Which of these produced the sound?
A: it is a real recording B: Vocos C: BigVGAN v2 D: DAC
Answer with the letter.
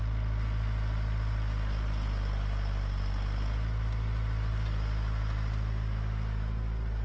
A